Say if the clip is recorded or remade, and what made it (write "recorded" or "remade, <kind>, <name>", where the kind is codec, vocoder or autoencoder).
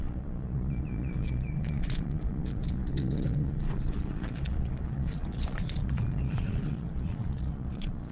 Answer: remade, vocoder, Vocos